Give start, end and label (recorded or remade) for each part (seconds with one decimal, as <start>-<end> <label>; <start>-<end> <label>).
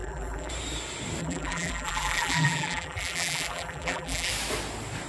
0.0-0.5 remade; 0.5-1.2 recorded; 1.2-4.3 remade; 4.3-5.1 recorded